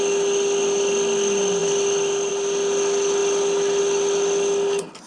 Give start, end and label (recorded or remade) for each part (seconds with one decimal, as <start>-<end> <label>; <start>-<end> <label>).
0.0-5.1 recorded